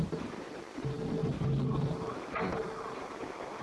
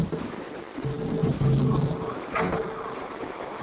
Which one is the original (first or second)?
second